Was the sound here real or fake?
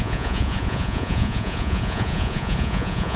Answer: fake